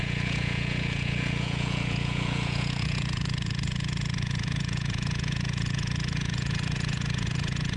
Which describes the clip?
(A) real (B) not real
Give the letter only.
B